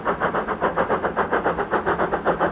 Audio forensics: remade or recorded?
recorded